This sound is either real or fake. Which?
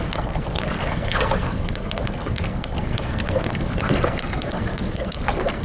fake